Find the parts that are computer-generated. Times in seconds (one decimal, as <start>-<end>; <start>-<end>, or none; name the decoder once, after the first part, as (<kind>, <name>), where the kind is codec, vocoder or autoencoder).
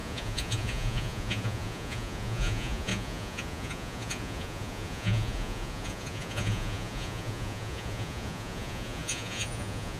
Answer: 0.0-10.0 (vocoder, Vocos)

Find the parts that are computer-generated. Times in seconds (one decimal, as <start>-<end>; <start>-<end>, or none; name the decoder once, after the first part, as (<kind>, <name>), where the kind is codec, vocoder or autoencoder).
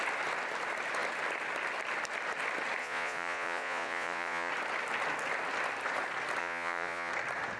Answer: 2.8-4.5 (vocoder, Vocos); 6.4-7.1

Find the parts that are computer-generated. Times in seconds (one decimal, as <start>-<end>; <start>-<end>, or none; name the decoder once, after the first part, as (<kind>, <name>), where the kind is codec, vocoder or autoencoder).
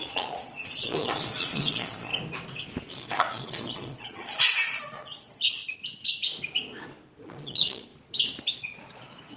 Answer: 0.0-2.1 (vocoder, Vocos); 2.9-5.6; 7.2-7.9; 8.5-9.4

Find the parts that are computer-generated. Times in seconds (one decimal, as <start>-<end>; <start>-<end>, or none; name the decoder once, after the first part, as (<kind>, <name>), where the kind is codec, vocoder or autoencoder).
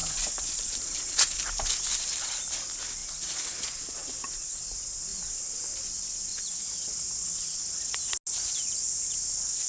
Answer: 3.0-4.6 (vocoder, Vocos); 5.1-5.6; 6.3-8.0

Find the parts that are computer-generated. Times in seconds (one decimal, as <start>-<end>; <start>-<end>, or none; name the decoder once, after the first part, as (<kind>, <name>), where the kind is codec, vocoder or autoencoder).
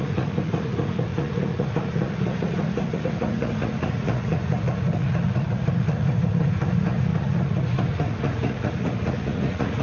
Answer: 0.0-9.8 (vocoder, Vocos)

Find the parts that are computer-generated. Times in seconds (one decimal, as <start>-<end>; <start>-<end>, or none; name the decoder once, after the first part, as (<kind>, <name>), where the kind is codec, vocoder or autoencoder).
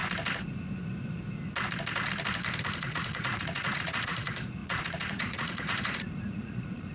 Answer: 2.8-6.9 (vocoder, Vocos)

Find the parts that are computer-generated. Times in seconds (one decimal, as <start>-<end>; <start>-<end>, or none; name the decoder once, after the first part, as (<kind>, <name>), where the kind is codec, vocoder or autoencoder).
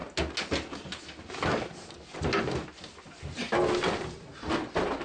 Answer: none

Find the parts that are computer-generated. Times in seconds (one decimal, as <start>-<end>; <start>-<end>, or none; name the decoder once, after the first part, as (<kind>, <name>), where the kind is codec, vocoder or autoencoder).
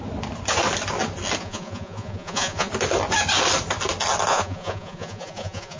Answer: 1.4-2.7 (vocoder, Vocos); 4.3-5.8